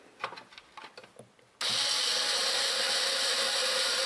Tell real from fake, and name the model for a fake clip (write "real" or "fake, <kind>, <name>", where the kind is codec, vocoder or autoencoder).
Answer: real